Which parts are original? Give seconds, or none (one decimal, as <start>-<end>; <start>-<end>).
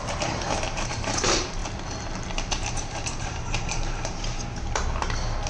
1.6-2.5; 4.8-5.5